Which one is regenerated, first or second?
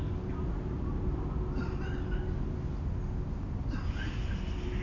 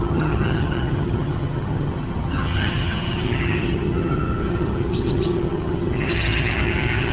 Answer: second